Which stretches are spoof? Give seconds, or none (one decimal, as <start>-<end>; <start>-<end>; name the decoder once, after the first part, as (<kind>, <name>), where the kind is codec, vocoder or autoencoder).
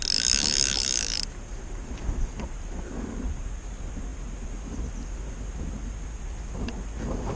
none